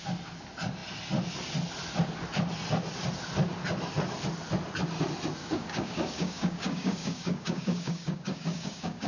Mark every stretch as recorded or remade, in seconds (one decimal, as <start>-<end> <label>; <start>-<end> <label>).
0.0-5.4 recorded; 5.4-9.1 remade